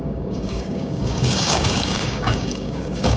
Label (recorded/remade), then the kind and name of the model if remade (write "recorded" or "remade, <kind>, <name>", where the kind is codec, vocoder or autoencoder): remade, codec, DAC